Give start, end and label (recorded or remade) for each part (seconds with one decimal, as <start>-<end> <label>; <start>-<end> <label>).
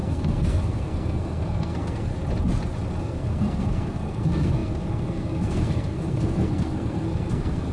0.0-2.1 remade; 2.1-3.0 recorded; 3.0-7.7 remade